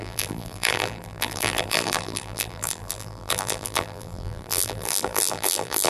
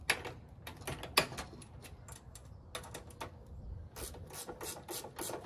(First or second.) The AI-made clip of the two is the first